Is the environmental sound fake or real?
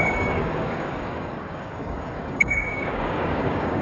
fake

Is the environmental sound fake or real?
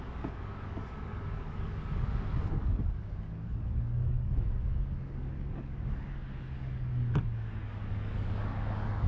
fake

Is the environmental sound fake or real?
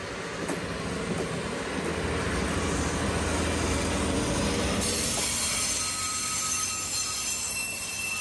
real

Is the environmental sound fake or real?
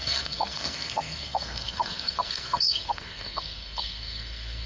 fake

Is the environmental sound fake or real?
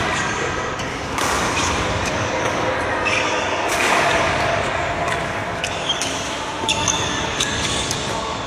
fake